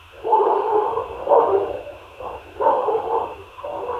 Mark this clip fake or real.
fake